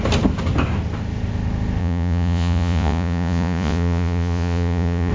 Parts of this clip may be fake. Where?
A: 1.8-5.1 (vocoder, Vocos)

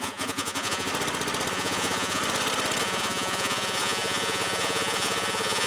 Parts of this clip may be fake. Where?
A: 0.0-0.9 (vocoder, Vocos); 1.5-2.2; 2.8-5.7

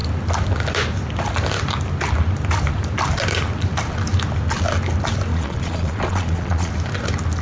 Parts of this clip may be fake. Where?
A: 5.3-6.7 (vocoder, Vocos)

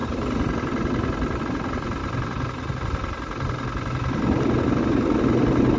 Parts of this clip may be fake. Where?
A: none

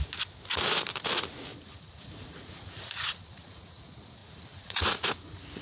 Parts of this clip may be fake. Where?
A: 1.5-3.8 (vocoder, Vocos); 4.2-5.6

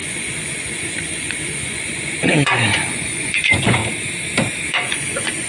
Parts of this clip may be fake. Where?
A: 0.0-3.8 (vocoder, Vocos); 4.7-5.5